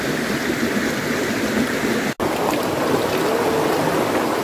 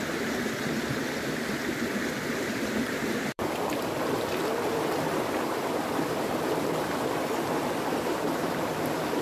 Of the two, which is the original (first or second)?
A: first